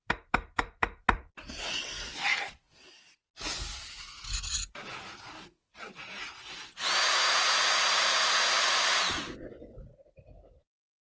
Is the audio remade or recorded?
recorded